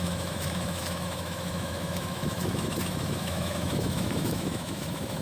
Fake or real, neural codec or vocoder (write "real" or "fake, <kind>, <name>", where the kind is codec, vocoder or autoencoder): fake, autoencoder, DAC-VAE